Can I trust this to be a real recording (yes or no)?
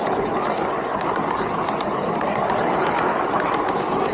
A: yes